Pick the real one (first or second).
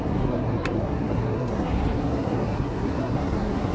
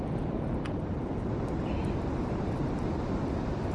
second